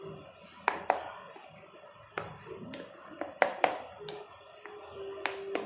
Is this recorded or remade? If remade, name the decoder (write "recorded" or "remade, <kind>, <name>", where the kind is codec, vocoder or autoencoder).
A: recorded